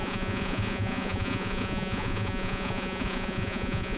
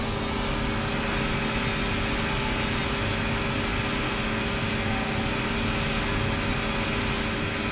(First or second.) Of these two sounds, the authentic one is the second